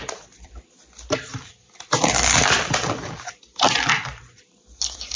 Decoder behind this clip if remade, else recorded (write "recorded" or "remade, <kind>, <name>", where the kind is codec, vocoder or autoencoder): remade, vocoder, BigVGAN v2